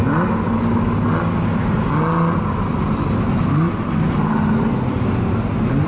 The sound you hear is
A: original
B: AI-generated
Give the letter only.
A